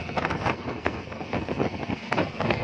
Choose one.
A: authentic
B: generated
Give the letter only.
B